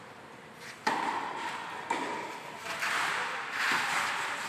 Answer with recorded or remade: recorded